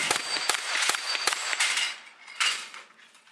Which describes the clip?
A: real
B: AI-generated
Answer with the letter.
B